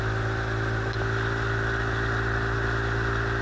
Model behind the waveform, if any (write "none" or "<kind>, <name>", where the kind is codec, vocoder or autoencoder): none